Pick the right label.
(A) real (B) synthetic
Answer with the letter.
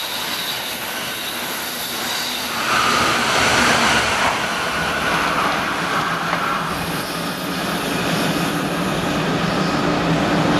A